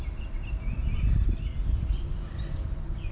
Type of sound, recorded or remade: recorded